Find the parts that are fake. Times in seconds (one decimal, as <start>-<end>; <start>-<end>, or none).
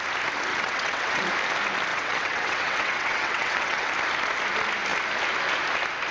0.5-1.2; 1.9-3.9